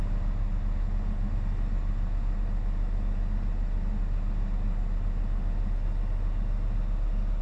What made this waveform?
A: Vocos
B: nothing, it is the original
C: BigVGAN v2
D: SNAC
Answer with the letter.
B